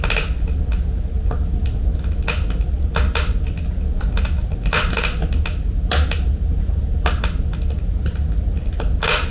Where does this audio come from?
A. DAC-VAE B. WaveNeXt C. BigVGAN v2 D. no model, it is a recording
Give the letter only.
D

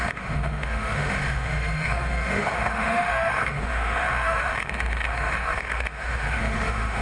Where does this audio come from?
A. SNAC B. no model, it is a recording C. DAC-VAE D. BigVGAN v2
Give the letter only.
C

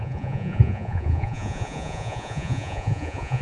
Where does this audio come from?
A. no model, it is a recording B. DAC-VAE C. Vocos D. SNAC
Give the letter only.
C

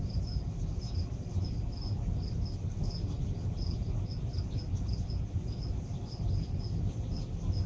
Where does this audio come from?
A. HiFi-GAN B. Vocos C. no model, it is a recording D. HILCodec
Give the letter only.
C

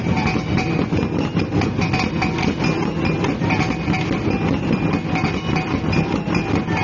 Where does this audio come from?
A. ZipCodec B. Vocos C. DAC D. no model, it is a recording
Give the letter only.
D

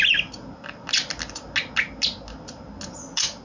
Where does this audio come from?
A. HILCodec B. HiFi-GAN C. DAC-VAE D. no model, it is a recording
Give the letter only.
D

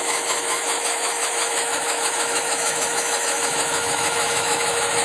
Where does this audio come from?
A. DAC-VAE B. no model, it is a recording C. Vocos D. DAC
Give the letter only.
A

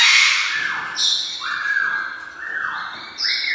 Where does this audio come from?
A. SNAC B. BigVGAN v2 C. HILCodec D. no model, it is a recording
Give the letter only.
D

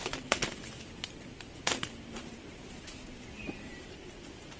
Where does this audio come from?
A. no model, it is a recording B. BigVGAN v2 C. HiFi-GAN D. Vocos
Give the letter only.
A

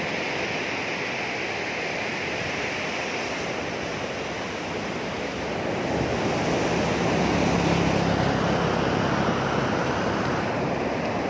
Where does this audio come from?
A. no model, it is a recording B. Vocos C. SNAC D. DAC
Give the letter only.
A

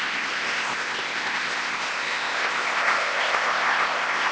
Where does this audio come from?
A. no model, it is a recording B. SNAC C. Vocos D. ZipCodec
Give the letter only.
D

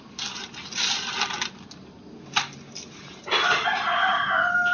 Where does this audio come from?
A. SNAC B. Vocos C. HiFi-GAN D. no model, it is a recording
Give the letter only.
D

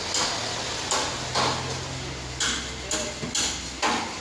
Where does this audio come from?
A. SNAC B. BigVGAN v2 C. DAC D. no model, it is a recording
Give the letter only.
D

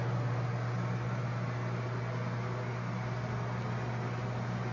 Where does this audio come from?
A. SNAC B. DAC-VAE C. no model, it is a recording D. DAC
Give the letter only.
C